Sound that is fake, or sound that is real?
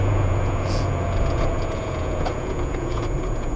fake